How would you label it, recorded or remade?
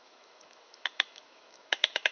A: remade